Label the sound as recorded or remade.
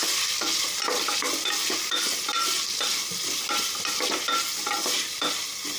recorded